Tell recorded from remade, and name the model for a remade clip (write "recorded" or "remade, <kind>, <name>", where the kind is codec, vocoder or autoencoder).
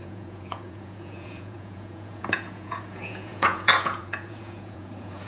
remade, vocoder, Vocos